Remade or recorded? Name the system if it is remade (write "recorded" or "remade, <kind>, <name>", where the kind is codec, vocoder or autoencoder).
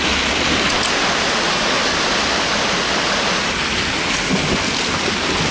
recorded